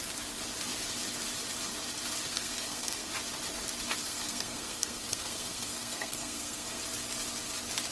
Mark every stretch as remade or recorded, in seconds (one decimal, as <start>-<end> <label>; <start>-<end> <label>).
0.0-2.3 recorded; 2.3-3.1 remade; 3.1-4.0 recorded; 4.0-6.8 remade; 6.8-7.9 recorded